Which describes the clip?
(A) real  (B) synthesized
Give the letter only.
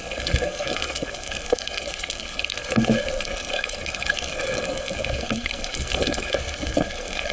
B